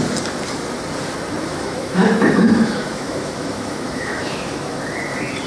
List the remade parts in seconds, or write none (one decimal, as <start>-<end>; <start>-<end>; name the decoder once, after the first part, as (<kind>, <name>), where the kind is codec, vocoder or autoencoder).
1.5-4.8 (autoencoder, DAC-VAE)